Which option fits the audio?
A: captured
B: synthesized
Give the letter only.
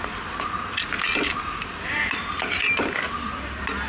A